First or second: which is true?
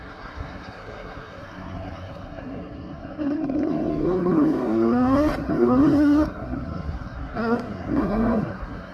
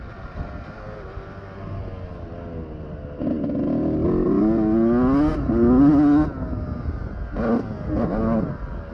second